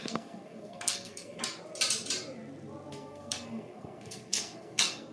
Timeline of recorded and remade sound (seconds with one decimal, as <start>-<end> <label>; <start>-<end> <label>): 0.0-1.4 remade; 1.4-2.9 recorded; 2.9-5.1 remade